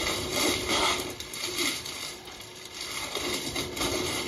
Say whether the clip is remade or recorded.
remade